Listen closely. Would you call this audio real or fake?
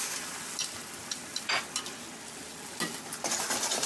real